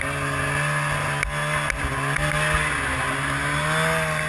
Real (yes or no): yes